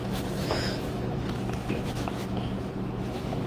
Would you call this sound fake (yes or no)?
yes